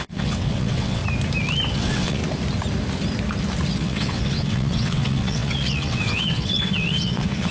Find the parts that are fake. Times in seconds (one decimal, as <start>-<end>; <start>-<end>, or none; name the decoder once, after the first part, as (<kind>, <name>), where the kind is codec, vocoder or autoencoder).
0.0-1.0 (vocoder, WaveNeXt); 1.7-2.2; 3.7-7.5